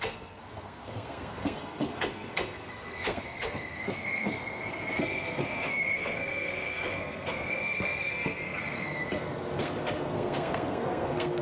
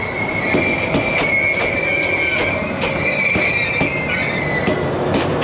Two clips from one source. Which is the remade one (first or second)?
first